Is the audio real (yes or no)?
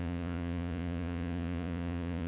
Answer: no